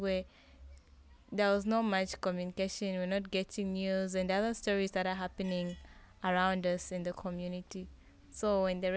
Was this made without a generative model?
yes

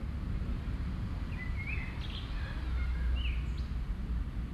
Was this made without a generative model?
yes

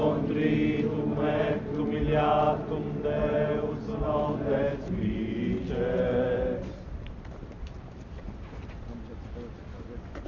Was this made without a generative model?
yes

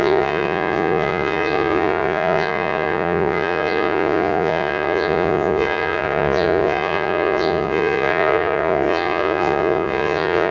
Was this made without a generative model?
no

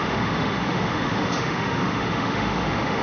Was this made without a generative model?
no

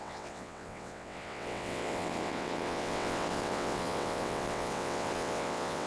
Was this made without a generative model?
no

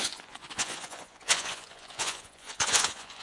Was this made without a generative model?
no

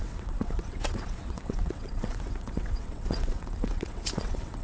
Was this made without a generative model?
no